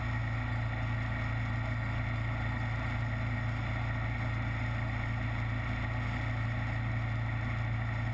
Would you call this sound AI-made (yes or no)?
no